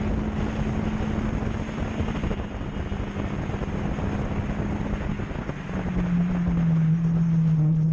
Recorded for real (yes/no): yes